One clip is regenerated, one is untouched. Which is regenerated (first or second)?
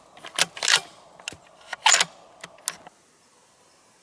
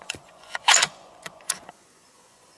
second